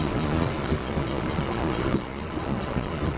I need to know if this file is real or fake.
fake